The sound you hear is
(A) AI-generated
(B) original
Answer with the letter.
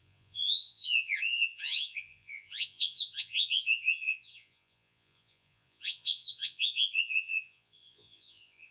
A